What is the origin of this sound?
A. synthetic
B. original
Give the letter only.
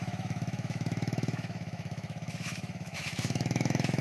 A